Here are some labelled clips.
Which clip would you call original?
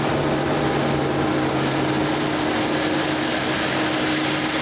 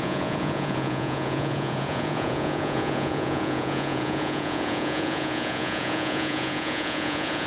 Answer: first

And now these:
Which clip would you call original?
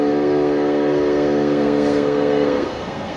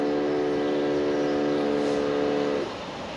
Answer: second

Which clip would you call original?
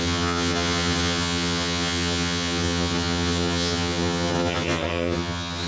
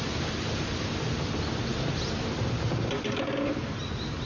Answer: second